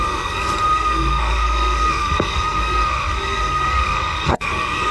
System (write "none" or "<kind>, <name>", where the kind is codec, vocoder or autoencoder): codec, SNAC